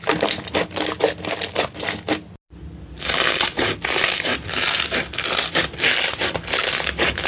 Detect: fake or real real